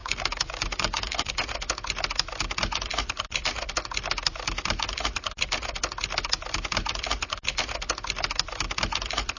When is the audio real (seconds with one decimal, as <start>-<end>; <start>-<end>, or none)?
1.3-9.4